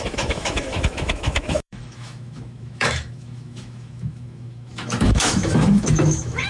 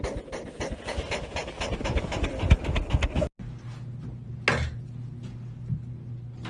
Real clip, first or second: second